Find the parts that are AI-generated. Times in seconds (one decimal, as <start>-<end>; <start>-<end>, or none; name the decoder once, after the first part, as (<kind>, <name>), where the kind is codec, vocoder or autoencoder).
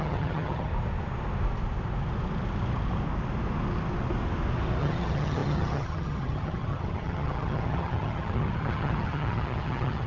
0.0-0.7 (vocoder, HiFi-GAN); 4.8-10.1